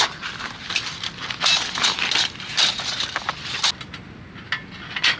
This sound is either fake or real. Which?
real